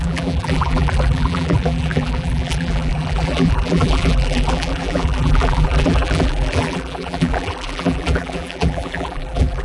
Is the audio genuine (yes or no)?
no